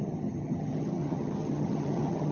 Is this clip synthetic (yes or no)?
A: yes